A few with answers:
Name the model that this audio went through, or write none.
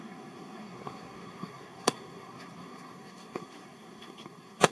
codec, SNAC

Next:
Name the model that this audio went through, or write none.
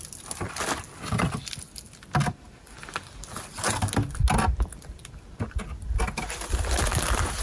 none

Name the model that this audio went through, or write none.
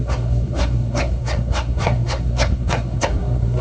codec, SNAC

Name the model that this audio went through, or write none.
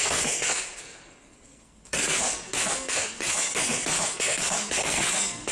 codec, SNAC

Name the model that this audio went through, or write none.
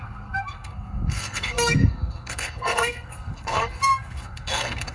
codec, SNAC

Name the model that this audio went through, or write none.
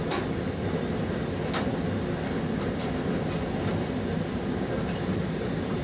none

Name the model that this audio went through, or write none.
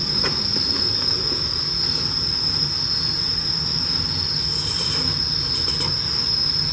none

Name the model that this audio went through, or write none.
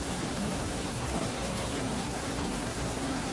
codec, SNAC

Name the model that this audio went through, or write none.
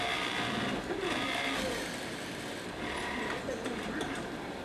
none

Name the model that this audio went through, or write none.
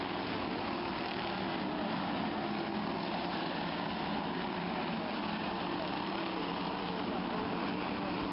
none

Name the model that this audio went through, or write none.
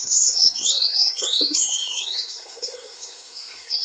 codec, SNAC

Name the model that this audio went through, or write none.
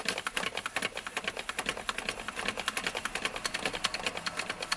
none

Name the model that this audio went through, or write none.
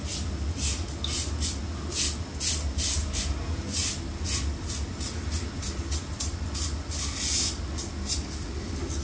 none